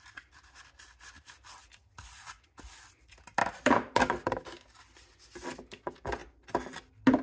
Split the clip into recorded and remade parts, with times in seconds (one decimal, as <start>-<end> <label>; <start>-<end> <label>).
0.0-3.4 recorded; 3.4-3.9 remade; 3.9-7.2 recorded